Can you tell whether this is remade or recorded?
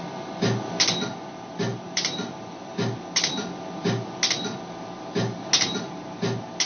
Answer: recorded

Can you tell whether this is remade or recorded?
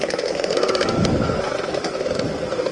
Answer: remade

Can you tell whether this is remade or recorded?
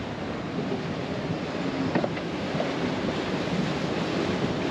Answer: recorded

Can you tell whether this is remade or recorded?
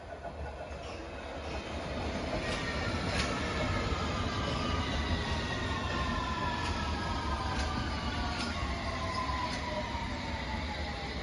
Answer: recorded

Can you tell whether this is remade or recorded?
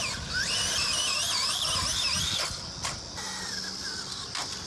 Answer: recorded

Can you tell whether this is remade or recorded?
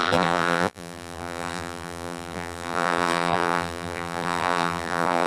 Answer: remade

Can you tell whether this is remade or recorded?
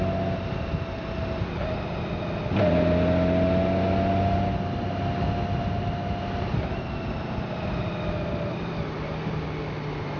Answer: recorded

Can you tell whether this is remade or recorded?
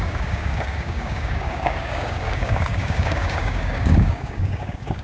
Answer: remade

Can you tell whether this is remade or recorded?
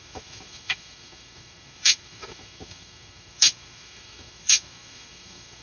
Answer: remade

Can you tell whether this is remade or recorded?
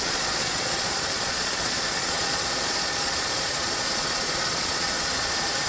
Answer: remade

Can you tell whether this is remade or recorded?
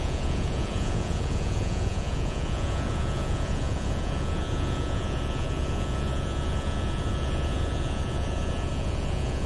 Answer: remade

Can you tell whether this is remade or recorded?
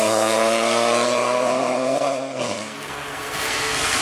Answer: remade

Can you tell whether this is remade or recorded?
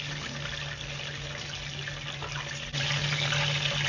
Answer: recorded